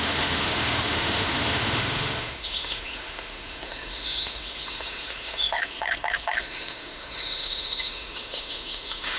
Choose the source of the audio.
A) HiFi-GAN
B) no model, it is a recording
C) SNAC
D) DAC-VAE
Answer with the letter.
D